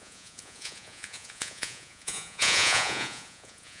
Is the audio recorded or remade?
remade